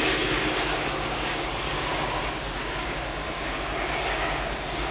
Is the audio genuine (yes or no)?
no